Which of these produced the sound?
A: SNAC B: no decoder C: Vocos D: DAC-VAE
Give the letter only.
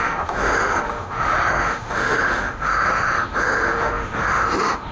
D